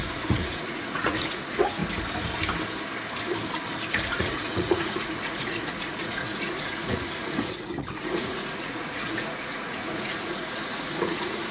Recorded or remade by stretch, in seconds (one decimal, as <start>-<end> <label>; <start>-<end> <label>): 0.0-1.8 remade; 1.8-3.9 recorded; 3.9-11.5 remade